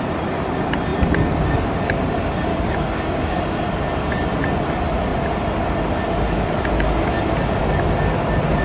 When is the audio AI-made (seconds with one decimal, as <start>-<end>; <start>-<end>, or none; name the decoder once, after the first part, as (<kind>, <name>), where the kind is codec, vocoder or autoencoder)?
2.5-3.4 (codec, DAC)